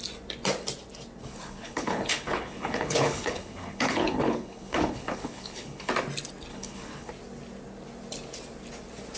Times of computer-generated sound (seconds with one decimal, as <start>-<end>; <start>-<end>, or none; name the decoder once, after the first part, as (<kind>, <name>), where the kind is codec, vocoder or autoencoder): 1.2-5.9 (codec, HILCodec); 6.5-7.1